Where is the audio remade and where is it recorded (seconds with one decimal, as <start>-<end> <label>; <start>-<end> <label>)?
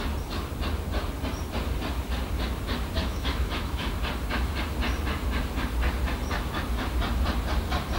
0.0-3.0 recorded; 3.0-3.9 remade; 3.9-8.0 recorded